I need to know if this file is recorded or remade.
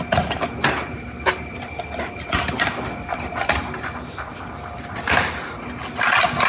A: recorded